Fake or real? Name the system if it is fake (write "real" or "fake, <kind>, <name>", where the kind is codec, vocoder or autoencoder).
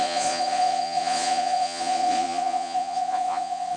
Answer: fake, vocoder, Vocos